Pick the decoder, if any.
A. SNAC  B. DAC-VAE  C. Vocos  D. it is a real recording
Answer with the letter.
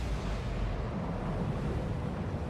D